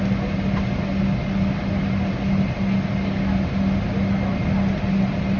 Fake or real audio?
real